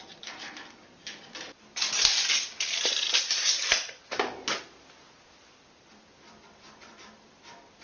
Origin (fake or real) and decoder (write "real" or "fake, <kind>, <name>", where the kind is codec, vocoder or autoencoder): fake, vocoder, BigVGAN v2